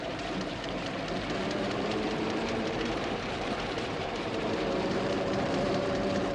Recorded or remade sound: remade